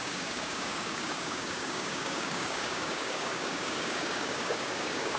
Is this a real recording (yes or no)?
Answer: no